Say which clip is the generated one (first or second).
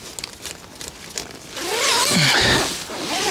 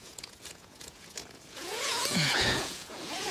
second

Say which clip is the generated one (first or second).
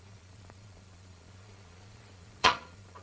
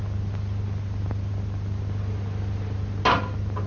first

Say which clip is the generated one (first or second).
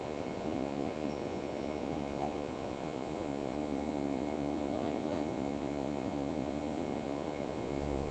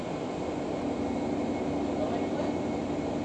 first